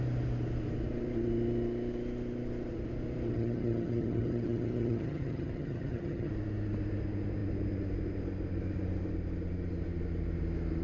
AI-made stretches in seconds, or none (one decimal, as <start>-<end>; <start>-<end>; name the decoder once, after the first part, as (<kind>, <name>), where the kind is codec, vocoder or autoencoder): 3.3-6.3 (vocoder, HiFi-GAN)